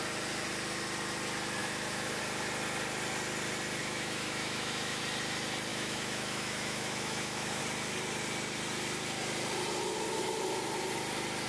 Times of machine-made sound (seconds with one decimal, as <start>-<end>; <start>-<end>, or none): 1.6-2.2; 3.8-5.0; 5.7-7.6